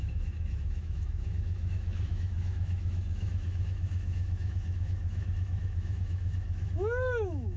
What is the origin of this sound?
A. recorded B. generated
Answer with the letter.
B